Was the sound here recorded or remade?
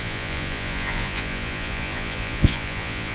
remade